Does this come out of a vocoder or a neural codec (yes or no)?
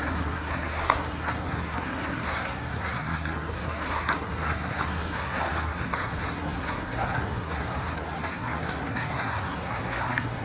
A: yes